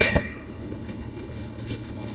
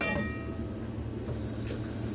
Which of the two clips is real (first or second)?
second